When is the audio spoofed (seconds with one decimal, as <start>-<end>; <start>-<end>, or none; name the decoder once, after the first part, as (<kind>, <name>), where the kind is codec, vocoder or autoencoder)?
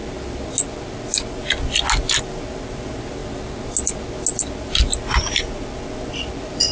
none